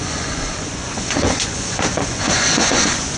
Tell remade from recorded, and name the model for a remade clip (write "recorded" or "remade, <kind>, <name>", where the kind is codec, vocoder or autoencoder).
remade, vocoder, Vocos